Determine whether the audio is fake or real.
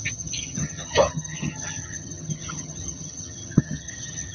fake